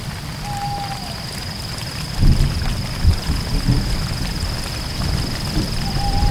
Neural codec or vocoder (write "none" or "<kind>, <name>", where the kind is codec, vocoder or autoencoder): none